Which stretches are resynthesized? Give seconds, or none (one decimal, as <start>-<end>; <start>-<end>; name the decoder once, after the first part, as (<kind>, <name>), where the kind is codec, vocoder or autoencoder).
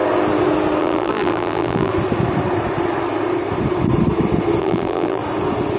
0.8-1.9 (vocoder, BigVGAN v2); 4.6-5.2